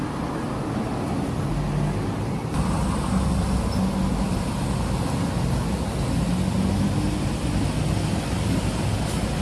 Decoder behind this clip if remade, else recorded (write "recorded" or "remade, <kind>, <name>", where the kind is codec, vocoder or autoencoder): recorded